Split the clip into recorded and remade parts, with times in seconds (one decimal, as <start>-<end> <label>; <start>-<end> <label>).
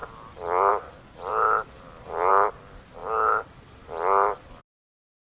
0.0-5.3 recorded